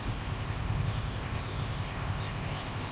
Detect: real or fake fake